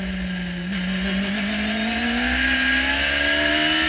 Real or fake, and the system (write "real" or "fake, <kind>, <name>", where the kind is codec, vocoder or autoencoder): real